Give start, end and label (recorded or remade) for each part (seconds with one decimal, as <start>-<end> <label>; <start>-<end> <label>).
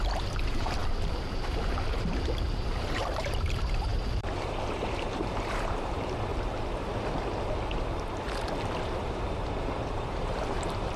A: 0.0-6.3 remade; 6.3-8.8 recorded; 8.8-11.0 remade